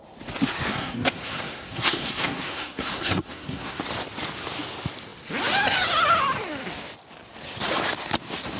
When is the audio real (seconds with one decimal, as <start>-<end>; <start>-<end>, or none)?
0.0-0.7; 3.8-8.6